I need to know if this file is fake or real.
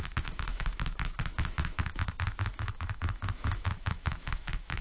fake